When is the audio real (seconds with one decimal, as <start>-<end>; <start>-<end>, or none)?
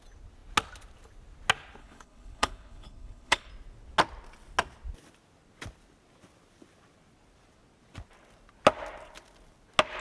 0.0-1.8; 3.5-10.0